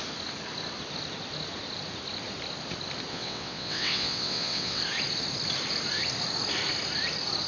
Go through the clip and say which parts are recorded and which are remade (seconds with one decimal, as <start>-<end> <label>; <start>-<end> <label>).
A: 0.0-3.1 recorded; 3.1-4.8 remade; 4.8-7.5 recorded

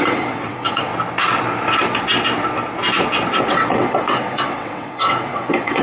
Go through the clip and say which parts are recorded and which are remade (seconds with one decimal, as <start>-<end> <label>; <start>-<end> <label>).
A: 0.0-0.9 remade; 0.9-3.4 recorded; 3.4-5.8 remade

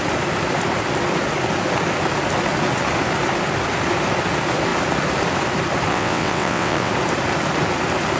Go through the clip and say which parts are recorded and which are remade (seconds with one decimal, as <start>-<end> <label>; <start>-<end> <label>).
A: 0.0-5.9 recorded; 5.9-6.9 remade; 6.9-8.2 recorded

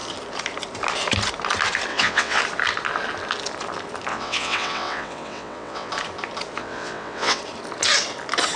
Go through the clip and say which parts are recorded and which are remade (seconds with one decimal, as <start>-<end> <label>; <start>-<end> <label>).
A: 0.0-1.9 recorded; 1.9-2.4 remade; 2.4-4.1 recorded; 4.1-5.9 remade; 5.9-6.6 recorded; 6.6-7.4 remade; 7.4-8.6 recorded

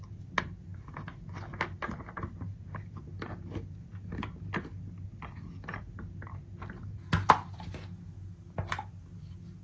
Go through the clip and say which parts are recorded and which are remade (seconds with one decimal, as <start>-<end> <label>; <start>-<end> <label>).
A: 0.0-9.6 recorded

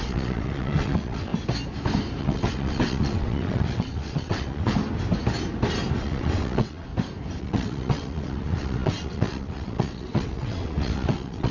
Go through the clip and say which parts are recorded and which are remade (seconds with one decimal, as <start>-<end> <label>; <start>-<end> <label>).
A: 0.0-1.3 remade; 1.3-2.2 recorded; 2.2-4.7 remade; 4.7-6.0 recorded; 6.0-6.9 remade; 6.9-7.4 recorded; 7.4-11.5 remade